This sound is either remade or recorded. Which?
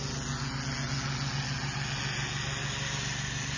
recorded